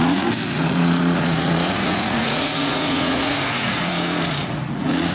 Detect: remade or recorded remade